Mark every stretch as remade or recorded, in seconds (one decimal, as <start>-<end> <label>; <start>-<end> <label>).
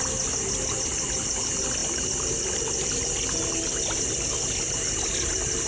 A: 0.0-5.7 recorded